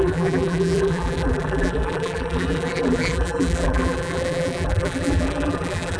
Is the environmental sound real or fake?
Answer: fake